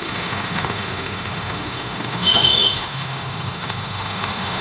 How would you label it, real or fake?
fake